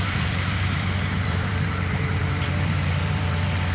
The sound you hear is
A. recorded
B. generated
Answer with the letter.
B